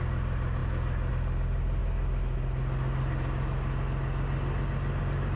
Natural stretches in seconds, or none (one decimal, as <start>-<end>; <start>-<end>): 0.0-5.4